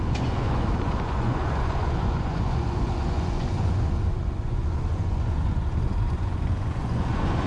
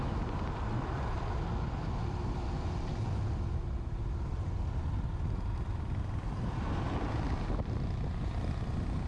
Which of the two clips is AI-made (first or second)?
first